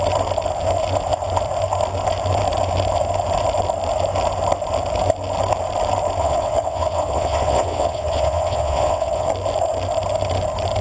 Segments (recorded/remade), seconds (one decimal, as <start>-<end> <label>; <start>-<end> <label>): 0.0-6.2 recorded; 6.2-9.3 remade; 9.3-10.8 recorded